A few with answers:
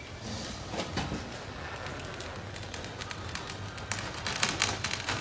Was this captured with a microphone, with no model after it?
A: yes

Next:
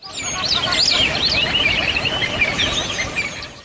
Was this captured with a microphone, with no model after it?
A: yes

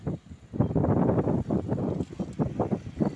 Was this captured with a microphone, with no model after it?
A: yes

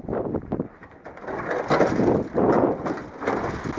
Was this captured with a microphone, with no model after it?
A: yes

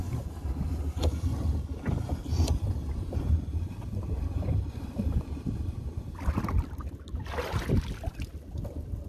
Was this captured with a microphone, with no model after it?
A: yes